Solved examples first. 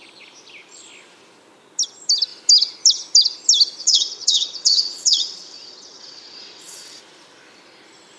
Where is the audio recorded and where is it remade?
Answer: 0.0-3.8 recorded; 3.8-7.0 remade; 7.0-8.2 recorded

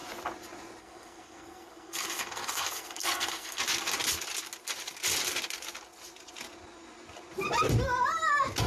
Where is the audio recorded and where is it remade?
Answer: 0.0-0.8 recorded; 0.8-3.6 remade; 3.6-8.7 recorded

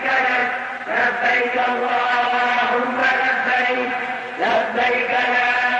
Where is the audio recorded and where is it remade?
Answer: 0.0-0.4 remade; 0.4-1.4 recorded; 1.4-5.8 remade

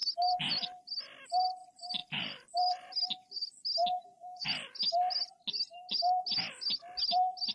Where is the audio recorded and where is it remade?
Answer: 0.0-7.5 recorded

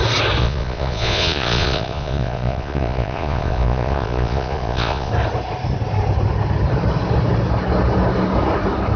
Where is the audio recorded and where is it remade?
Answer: 0.0-0.4 recorded; 0.4-5.1 remade; 5.1-9.0 recorded

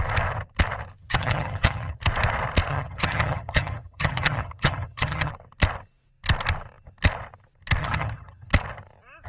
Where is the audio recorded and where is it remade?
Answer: 0.0-1.0 recorded; 1.0-2.0 remade; 2.0-2.7 recorded; 2.7-5.3 remade; 5.3-7.8 recorded; 7.8-8.5 remade; 8.5-9.3 recorded

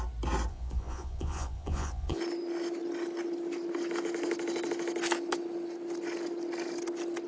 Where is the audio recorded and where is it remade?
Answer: 0.0-0.5 recorded; 0.5-2.2 remade; 2.2-7.3 recorded

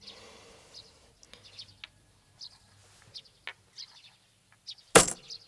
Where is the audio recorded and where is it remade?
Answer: 0.0-5.5 recorded